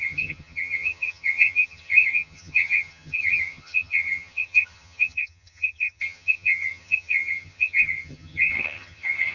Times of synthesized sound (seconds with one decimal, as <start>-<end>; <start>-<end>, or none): 0.0-9.3